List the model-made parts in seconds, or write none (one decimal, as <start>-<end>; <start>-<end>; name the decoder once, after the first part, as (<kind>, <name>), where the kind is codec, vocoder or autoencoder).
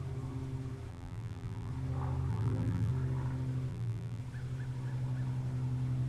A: 0.9-1.7 (vocoder, BigVGAN v2); 2.3-2.9; 3.7-4.2